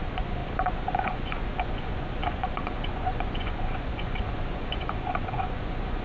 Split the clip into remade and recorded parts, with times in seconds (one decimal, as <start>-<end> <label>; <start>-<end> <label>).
0.0-6.0 remade